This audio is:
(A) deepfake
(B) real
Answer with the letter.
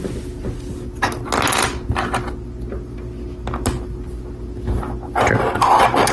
B